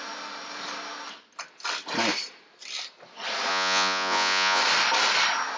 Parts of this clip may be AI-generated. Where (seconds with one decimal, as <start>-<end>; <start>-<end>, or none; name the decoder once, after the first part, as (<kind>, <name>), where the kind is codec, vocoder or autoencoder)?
3.5-4.6 (vocoder, Vocos)